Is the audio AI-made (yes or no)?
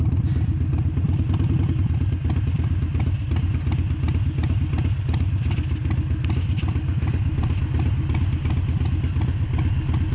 no